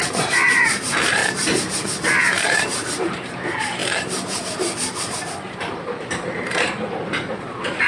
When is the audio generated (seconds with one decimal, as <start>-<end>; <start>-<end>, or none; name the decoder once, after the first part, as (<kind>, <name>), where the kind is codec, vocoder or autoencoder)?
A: 0.0-1.2 (vocoder, BigVGAN v2); 2.3-3.8; 5.4-7.9